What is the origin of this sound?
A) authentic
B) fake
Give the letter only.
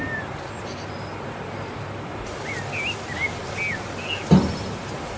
A